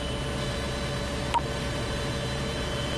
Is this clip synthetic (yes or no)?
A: no